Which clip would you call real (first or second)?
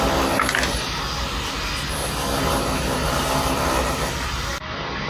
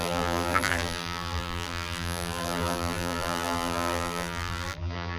first